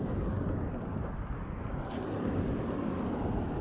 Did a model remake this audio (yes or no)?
no